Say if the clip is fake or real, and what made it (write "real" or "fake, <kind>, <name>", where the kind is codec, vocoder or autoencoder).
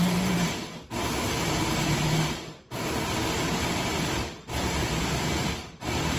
fake, vocoder, BigVGAN v2